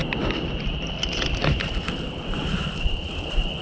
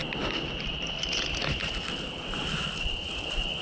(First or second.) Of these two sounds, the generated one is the first